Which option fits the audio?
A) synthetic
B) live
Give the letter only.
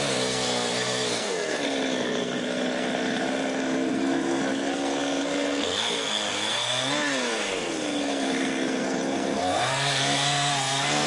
A